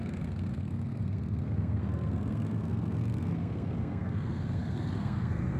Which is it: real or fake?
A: fake